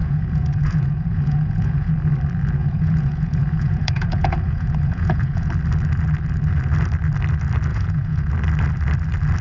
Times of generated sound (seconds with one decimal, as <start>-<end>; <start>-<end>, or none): 0.0-1.9; 2.6-5.5; 7.7-8.3

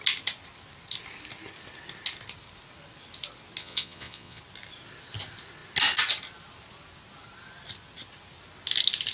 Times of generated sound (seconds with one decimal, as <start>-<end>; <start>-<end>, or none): 3.6-4.4